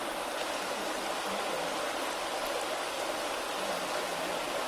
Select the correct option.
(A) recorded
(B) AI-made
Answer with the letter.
A